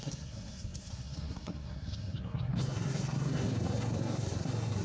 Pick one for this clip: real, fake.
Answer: fake